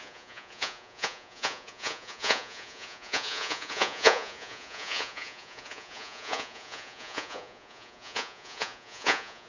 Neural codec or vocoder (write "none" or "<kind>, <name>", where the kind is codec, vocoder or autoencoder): vocoder, Vocos